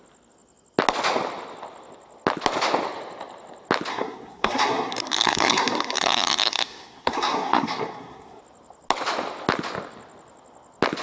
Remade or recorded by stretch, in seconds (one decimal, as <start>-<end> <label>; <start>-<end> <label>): 0.0-3.9 recorded; 3.9-8.4 remade; 8.4-11.0 recorded